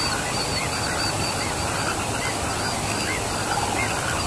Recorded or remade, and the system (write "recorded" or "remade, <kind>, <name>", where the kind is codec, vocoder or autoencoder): recorded